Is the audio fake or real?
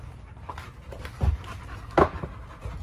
real